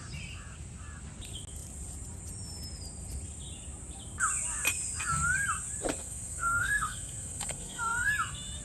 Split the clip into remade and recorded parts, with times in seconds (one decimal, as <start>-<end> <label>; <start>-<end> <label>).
0.0-6.0 recorded; 6.0-8.1 remade; 8.1-8.6 recorded